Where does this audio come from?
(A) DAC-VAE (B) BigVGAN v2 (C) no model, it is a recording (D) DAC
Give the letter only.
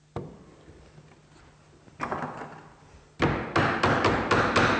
C